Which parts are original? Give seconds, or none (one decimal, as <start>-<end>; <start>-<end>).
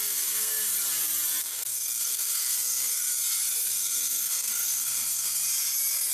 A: 0.7-1.4; 3.2-3.7; 5.4-6.1